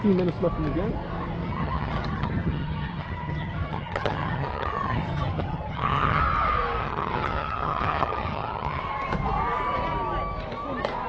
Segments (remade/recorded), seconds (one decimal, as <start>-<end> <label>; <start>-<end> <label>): 0.0-1.4 recorded; 1.4-6.2 remade; 6.2-6.8 recorded; 6.8-8.8 remade; 8.8-11.1 recorded